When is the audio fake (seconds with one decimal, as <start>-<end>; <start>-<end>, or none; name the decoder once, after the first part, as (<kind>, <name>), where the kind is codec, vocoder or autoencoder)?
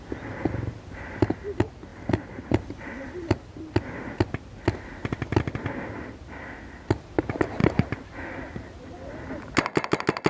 1.9-3.5 (vocoder, BigVGAN v2)